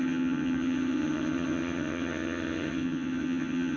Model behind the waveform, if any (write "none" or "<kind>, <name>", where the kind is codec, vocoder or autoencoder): vocoder, HiFi-GAN